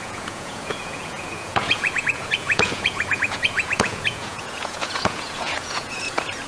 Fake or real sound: fake